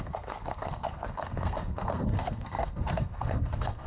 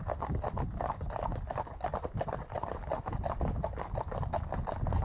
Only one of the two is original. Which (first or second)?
second